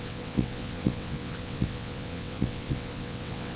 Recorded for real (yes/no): no